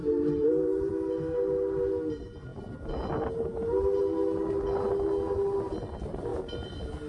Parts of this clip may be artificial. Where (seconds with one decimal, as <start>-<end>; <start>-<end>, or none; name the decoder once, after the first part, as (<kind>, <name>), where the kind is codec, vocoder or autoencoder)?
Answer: 0.0-0.9 (vocoder, BigVGAN v2)